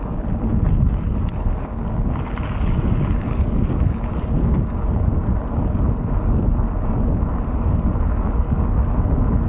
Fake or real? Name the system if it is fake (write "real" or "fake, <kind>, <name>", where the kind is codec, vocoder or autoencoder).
real